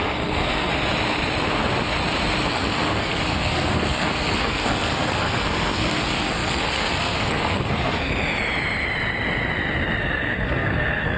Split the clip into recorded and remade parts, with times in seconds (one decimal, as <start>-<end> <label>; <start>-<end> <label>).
0.0-0.7 remade; 0.7-2.5 recorded; 2.5-8.1 remade; 8.1-10.0 recorded; 10.0-11.2 remade